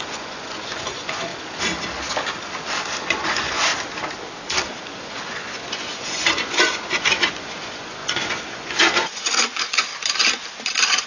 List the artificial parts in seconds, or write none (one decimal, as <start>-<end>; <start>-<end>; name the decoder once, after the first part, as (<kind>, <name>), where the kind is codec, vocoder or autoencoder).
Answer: 0.0-1.3 (vocoder, Vocos); 3.0-3.7; 4.8-9.9